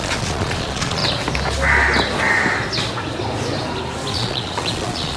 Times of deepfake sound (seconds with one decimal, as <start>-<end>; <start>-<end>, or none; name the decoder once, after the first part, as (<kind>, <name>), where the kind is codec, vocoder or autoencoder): 0.0-1.0 (vocoder, Vocos); 4.1-5.2

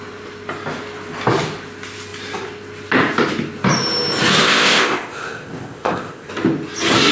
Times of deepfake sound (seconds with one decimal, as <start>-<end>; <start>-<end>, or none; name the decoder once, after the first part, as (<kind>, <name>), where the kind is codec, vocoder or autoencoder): 4.4-6.3 (codec, ZipCodec)

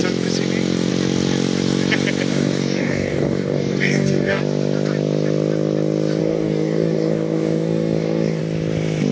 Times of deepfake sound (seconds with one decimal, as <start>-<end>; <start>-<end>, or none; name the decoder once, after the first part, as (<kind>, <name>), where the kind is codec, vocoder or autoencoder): 2.3-4.4 (codec, DAC); 6.2-8.4

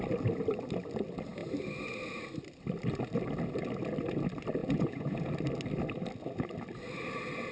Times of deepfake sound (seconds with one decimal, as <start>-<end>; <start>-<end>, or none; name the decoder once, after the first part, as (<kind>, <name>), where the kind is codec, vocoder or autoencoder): 4.6-5.3 (vocoder, Vocos)

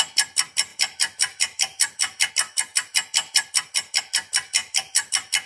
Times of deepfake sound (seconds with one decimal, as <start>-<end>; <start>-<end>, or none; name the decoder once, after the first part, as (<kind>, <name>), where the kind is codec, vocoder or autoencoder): 0.7-2.3 (vocoder, BigVGAN v2); 2.7-4.0; 4.6-5.5

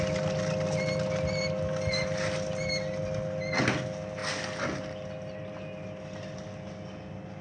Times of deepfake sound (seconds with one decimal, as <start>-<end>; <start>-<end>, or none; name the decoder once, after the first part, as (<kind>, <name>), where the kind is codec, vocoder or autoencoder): none

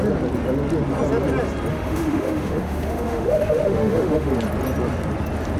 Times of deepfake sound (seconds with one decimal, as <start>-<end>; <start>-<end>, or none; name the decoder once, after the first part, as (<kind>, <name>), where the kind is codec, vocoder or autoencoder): 1.7-4.3 (autoencoder, DAC-VAE)